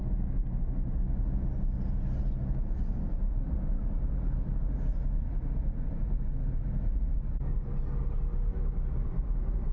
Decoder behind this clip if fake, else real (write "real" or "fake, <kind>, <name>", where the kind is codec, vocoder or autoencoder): real